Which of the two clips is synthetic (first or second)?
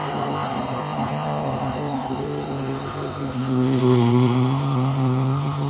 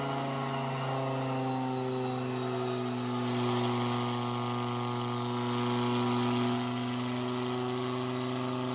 first